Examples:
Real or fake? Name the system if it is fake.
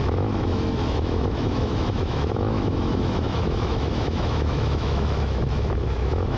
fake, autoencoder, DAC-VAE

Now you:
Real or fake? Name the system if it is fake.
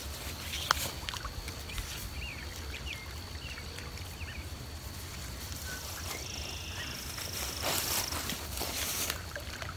real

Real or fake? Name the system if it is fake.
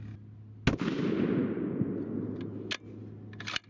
real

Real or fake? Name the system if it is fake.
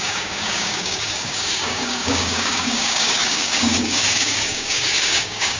fake, codec, DAC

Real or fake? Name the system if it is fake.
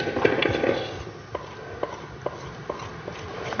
real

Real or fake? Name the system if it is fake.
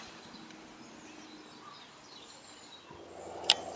real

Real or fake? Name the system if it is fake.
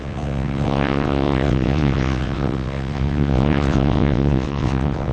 fake, vocoder, WaveNeXt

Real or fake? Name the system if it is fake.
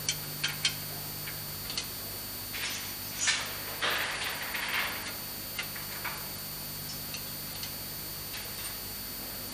real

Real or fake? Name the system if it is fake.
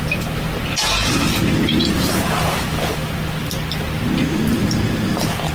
real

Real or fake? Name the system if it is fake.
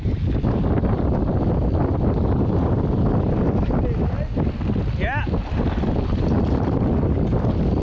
fake, vocoder, BigVGAN v2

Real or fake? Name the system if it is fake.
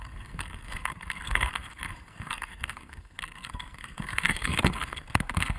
fake, codec, SNAC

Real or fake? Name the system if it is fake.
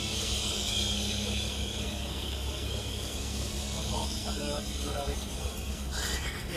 fake, codec, SNAC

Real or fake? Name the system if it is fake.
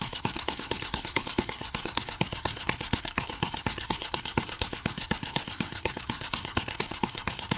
fake, codec, SNAC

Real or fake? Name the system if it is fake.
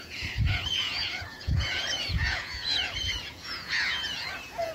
fake, vocoder, Vocos